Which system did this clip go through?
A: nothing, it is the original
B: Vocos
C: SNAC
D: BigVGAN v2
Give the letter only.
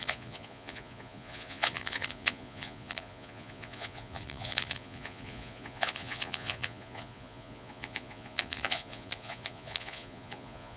B